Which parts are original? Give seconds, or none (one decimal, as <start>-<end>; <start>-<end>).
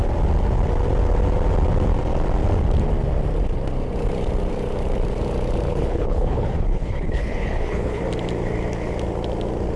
0.0-5.7; 8.0-9.8